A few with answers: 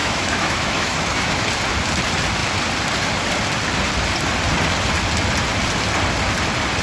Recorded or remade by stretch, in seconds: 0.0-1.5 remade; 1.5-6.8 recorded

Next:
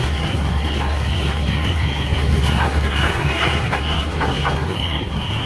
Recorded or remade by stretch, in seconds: 0.0-5.5 remade

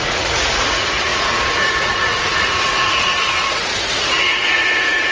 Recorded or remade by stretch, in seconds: 0.0-5.1 remade

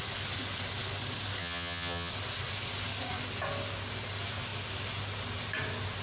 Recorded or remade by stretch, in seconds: 0.0-1.4 recorded; 1.4-2.1 remade; 2.1-6.0 recorded

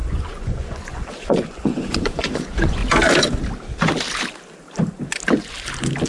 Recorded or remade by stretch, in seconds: 0.0-2.8 remade; 2.8-6.1 recorded

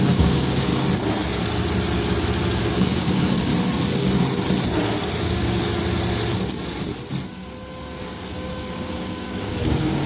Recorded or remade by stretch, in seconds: 0.0-0.7 remade; 0.7-2.6 recorded; 2.6-3.5 remade; 3.5-5.2 recorded; 5.2-5.7 remade; 5.7-8.0 recorded; 8.0-10.1 remade

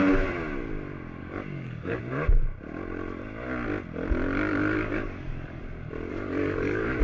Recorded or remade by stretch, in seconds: 0.0-1.2 recorded; 1.2-2.0 remade; 2.0-4.5 recorded; 4.5-5.6 remade; 5.6-6.1 recorded; 6.1-7.0 remade